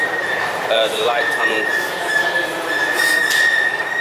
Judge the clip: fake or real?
fake